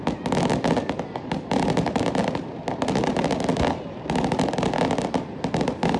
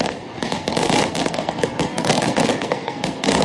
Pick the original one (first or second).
first